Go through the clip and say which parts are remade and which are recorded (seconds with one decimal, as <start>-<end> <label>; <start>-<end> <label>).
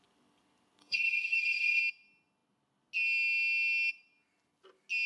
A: 0.0-0.8 recorded; 0.8-1.8 remade; 1.8-5.1 recorded